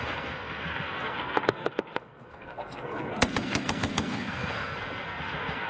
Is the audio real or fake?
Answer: fake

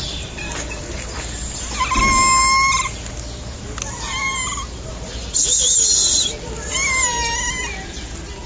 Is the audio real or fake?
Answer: real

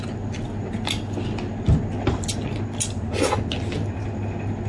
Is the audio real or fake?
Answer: real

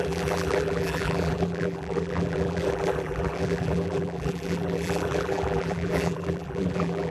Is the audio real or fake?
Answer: fake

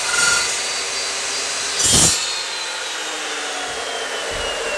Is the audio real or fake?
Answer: real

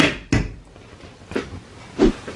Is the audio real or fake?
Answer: real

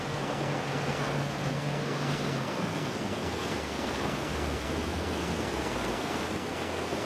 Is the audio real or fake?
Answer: fake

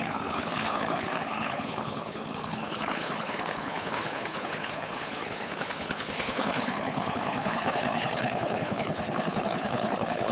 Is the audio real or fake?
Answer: fake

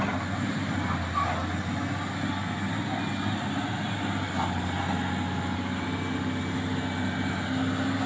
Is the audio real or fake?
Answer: real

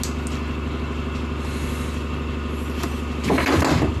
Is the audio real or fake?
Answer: real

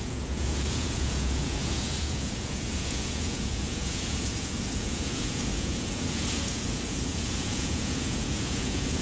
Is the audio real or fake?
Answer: fake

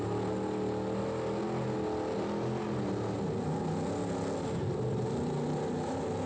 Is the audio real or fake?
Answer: real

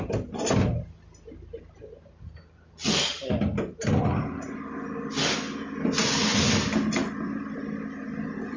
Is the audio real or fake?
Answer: real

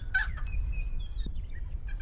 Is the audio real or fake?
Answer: real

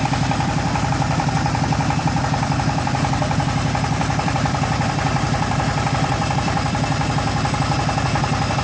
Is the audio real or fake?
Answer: fake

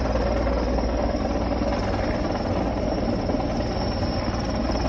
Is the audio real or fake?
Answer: real